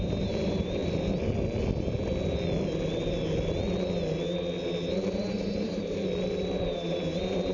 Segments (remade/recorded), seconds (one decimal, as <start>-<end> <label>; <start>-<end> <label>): 0.0-0.8 remade; 0.8-5.2 recorded; 5.2-7.5 remade